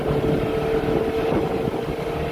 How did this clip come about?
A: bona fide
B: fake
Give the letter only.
A